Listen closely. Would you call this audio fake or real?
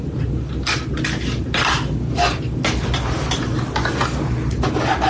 real